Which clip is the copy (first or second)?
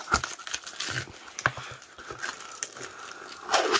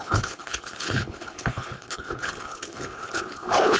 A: second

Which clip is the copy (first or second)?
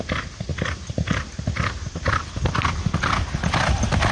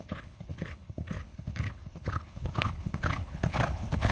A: second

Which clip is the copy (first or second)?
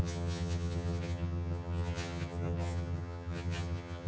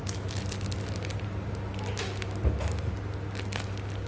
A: first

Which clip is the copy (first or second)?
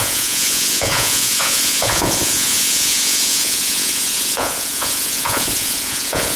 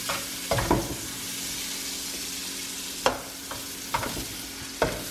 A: first